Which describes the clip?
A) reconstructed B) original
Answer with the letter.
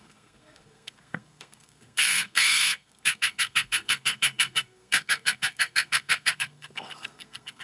A